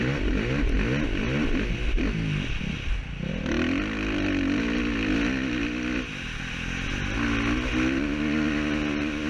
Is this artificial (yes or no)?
no